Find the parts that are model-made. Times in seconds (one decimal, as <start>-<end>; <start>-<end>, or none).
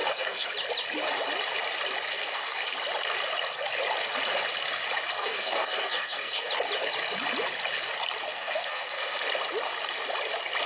0.0-0.5; 2.1-2.6; 5.2-6.5; 8.3-9.2